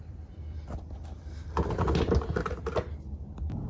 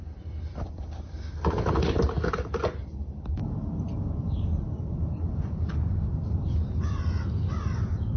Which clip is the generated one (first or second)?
second